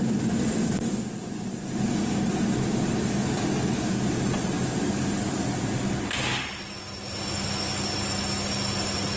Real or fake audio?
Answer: real